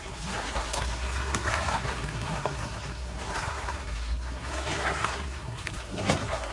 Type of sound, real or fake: fake